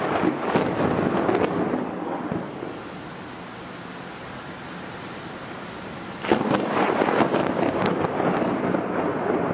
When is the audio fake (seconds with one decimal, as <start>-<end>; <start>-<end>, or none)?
7.4-8.4